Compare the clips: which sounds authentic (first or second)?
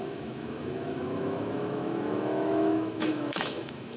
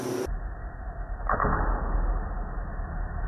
second